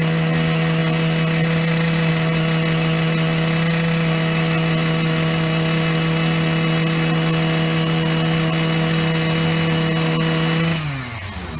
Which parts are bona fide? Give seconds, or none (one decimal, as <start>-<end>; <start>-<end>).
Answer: 0.0-11.6